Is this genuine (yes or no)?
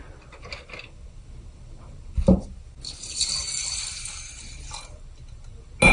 yes